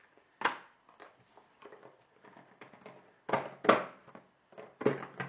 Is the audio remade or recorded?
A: recorded